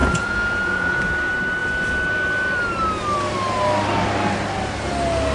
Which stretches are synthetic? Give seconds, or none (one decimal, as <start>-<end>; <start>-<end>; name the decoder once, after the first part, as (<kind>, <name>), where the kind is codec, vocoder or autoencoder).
0.0-1.0 (vocoder, Vocos)

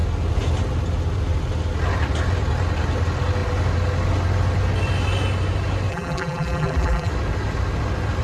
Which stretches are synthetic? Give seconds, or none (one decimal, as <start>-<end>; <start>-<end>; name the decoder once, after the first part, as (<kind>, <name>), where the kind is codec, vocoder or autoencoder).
5.9-7.1 (vocoder, BigVGAN v2)

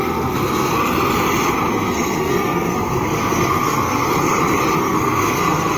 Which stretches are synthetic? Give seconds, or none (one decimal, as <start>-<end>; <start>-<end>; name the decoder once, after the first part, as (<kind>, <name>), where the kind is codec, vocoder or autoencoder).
0.0-0.7 (codec, SNAC); 1.7-4.0; 4.8-5.8

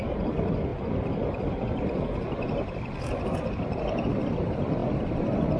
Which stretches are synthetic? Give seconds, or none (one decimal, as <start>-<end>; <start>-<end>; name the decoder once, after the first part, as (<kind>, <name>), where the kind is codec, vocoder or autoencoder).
none

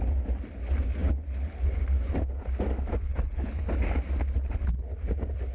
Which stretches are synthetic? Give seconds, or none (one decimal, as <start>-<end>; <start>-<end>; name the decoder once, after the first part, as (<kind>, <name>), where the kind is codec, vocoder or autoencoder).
3.1-3.6 (codec, HILCodec)

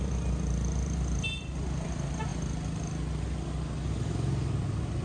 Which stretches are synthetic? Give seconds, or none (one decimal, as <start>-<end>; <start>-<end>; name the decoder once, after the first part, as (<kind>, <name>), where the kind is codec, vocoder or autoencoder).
none

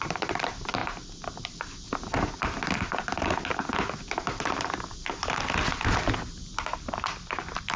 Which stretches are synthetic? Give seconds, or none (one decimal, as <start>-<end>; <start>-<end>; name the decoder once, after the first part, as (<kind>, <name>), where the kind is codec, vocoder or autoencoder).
none

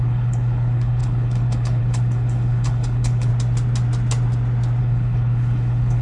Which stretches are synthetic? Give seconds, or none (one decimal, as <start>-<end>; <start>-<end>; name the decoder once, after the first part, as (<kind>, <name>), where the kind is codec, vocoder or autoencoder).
0.0-3.3 (codec, HILCodec); 4.8-6.0